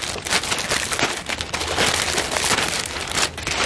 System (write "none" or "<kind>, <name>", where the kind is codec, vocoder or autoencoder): none